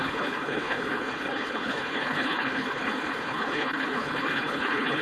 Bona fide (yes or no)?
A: no